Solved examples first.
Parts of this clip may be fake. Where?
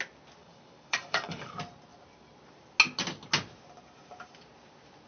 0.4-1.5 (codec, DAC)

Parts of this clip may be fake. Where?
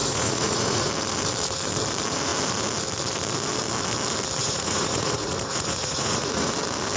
0.0-0.9 (vocoder, Vocos); 4.4-6.5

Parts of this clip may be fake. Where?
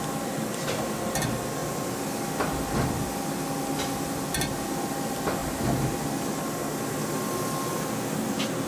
none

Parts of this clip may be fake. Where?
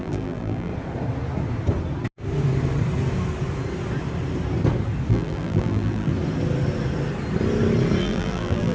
0.0-0.7 (vocoder, BigVGAN v2); 5.1-6.1; 8.0-8.7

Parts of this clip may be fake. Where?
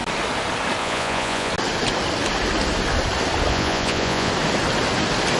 0.8-1.5 (vocoder, Vocos); 3.5-4.3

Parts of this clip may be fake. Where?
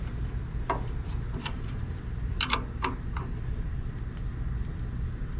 1.4-2.0 (vocoder, BigVGAN v2)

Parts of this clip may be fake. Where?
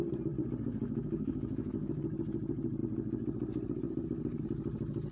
0.8-2.0 (autoencoder, DAC-VAE)